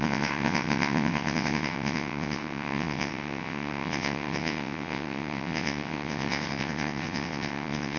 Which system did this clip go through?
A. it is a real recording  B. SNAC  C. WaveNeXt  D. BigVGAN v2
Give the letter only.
C